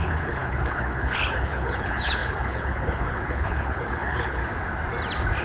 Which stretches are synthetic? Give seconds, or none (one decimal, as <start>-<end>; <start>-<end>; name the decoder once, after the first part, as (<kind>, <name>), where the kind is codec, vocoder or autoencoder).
0.0-4.4 (codec, HILCodec)